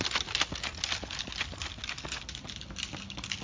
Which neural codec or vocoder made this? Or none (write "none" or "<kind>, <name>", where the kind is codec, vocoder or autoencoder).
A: none